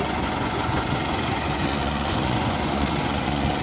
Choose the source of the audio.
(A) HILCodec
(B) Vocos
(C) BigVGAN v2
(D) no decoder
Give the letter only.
B